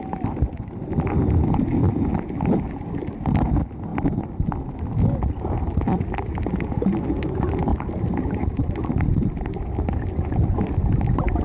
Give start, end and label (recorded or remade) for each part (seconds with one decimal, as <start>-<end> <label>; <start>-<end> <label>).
0.0-7.7 recorded; 7.7-8.7 remade; 8.7-11.4 recorded